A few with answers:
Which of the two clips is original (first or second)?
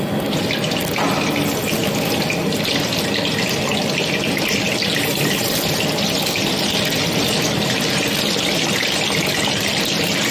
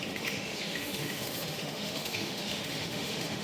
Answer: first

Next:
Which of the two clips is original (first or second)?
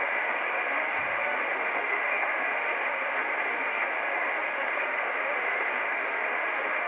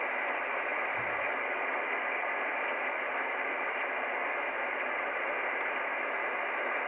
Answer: second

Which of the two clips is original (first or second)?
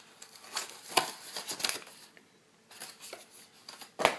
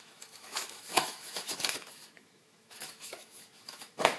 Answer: first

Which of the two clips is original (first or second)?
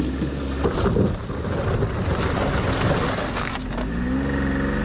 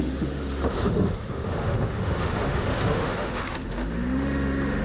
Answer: first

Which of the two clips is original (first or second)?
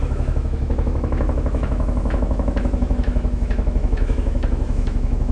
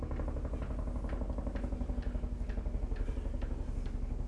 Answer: second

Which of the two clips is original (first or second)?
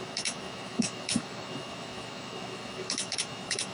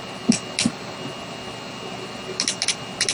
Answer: second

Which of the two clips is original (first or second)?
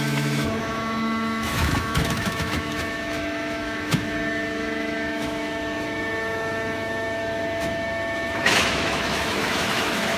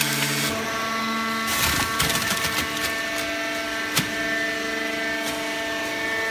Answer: second